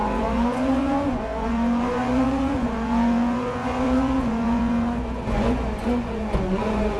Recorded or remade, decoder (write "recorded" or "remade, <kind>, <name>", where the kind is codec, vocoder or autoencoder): remade, vocoder, Vocos